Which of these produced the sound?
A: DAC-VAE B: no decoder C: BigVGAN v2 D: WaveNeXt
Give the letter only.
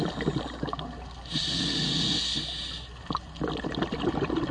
B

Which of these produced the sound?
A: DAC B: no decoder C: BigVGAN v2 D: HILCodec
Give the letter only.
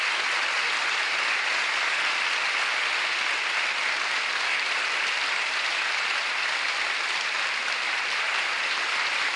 C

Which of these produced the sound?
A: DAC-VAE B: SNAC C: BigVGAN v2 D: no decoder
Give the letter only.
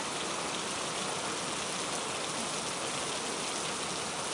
D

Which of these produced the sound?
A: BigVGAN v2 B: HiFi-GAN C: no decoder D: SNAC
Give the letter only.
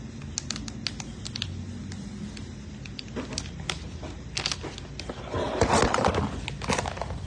C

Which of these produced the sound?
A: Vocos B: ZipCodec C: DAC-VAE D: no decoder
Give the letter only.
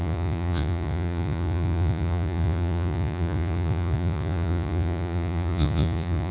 A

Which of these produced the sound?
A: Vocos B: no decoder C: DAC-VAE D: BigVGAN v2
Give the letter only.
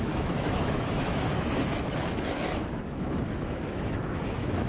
C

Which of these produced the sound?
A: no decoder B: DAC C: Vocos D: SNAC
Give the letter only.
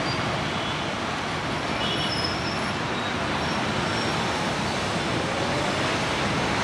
A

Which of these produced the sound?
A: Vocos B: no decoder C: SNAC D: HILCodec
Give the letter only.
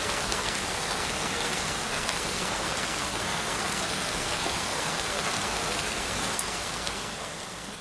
C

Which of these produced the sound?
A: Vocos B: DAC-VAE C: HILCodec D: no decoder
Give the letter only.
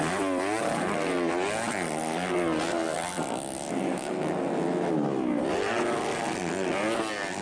D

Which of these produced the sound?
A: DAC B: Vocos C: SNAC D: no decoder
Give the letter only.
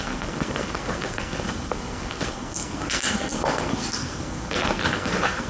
C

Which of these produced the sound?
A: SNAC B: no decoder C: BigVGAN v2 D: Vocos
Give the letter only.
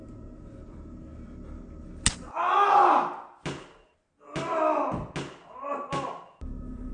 B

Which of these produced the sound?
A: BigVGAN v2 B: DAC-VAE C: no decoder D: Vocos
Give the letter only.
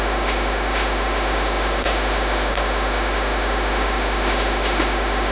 B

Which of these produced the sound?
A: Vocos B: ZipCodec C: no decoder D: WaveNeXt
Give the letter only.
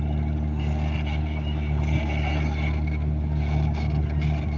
C